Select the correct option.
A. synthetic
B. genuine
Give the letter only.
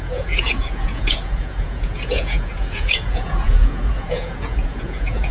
A